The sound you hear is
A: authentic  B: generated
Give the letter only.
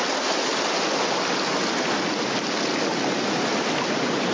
A